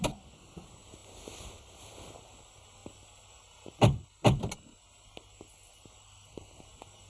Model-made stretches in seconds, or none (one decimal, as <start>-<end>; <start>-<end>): none